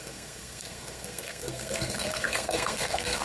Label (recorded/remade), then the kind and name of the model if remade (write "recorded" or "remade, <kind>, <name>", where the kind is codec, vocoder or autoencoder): remade, codec, SNAC